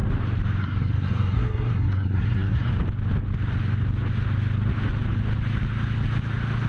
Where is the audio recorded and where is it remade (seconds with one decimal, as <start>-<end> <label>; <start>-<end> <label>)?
0.0-0.6 recorded; 0.6-2.7 remade; 2.7-6.7 recorded